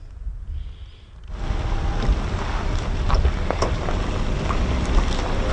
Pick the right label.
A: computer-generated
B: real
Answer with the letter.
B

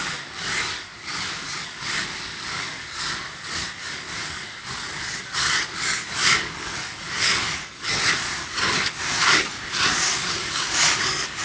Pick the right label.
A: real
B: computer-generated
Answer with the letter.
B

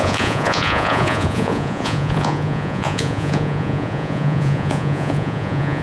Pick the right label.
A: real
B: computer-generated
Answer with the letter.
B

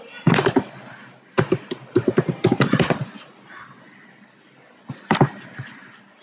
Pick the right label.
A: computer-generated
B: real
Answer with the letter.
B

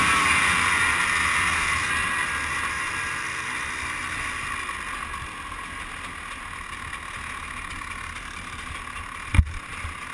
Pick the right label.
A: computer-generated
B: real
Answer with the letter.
B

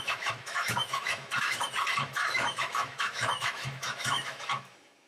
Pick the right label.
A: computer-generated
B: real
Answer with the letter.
A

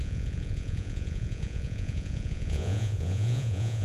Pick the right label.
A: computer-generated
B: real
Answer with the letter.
A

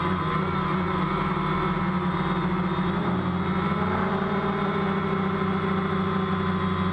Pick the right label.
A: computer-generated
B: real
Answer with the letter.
B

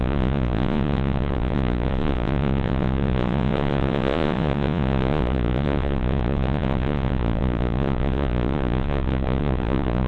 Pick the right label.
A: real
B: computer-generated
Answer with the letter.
B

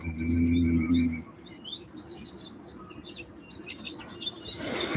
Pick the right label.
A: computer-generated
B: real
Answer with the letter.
B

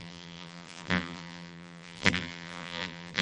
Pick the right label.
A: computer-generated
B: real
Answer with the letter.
A